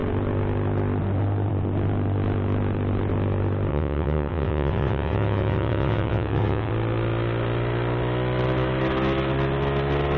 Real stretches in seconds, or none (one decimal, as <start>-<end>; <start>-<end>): 0.0-3.7; 6.7-10.2